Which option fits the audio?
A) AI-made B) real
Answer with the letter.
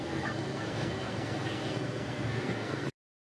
A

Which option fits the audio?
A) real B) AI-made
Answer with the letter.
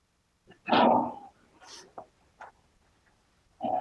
A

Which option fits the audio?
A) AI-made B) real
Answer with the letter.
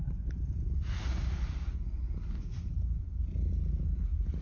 B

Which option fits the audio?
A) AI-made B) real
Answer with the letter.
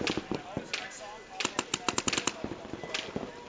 B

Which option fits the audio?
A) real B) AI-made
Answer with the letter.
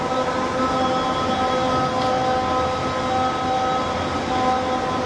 A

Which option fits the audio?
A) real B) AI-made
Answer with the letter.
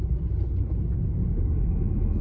A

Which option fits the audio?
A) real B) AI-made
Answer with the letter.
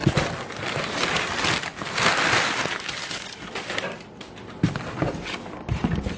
A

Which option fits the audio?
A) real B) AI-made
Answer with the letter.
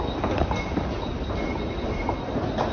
A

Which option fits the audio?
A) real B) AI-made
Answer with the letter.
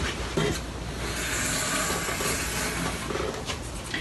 A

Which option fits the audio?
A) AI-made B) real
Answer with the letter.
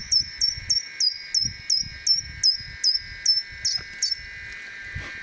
B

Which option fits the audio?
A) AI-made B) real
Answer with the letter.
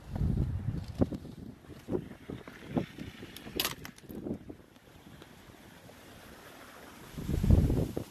B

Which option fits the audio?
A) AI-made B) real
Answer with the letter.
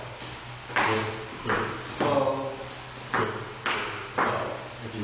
B